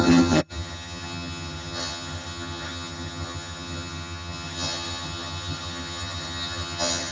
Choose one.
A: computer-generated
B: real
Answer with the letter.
A